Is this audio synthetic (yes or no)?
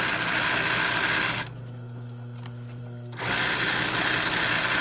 no